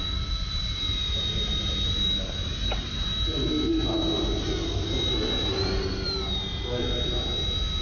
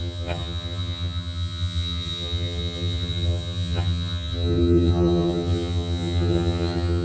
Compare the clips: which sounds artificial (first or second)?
second